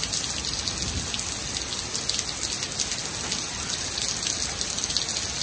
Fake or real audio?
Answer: real